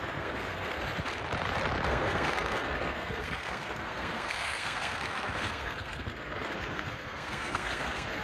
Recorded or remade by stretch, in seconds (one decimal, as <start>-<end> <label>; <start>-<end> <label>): 0.0-0.8 remade; 0.8-1.9 recorded; 1.9-8.2 remade